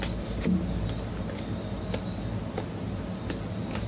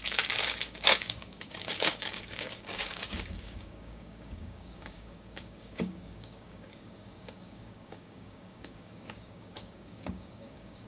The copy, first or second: second